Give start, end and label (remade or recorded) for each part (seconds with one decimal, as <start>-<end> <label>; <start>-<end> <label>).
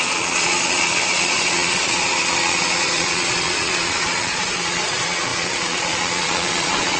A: 0.0-7.0 remade